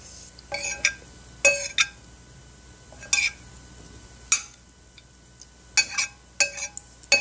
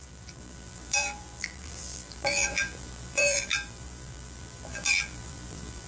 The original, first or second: first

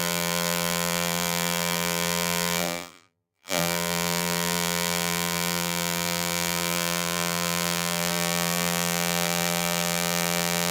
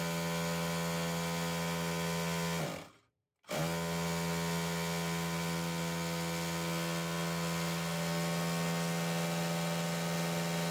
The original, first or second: second